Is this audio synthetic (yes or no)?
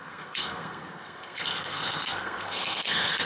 yes